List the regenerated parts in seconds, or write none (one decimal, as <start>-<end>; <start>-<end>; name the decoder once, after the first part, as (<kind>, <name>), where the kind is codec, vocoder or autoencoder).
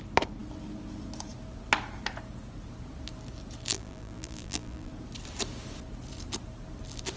3.7-4.9 (vocoder, BigVGAN v2)